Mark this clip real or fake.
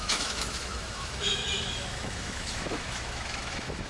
fake